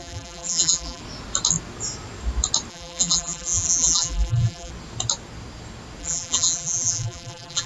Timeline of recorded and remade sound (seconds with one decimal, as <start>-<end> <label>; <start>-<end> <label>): 0.0-1.0 remade; 1.0-2.7 recorded; 2.7-4.7 remade; 4.7-6.0 recorded; 6.0-7.7 remade

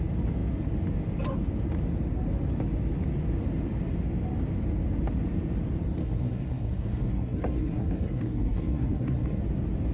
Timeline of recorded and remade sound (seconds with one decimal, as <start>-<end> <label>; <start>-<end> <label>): 0.0-6.0 recorded; 6.0-9.4 remade; 9.4-9.9 recorded

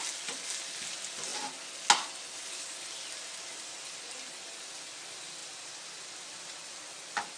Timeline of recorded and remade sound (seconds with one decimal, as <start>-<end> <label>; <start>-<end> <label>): 0.0-7.4 recorded

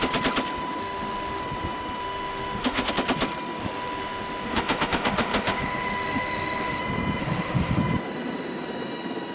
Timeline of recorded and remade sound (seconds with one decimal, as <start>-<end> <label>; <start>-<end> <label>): 0.0-0.8 recorded; 0.8-1.4 remade; 1.4-2.0 recorded; 2.0-2.9 remade; 2.9-3.6 recorded; 3.6-6.8 remade; 6.8-7.2 recorded; 7.2-7.8 remade; 7.8-9.3 recorded

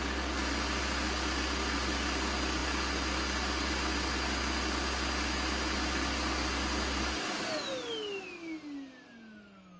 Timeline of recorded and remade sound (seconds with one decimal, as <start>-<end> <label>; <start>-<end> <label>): 0.0-9.8 recorded